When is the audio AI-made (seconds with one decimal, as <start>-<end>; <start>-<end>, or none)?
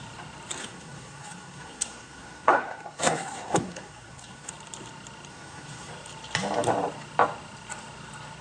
0.6-4.5; 5.3-5.9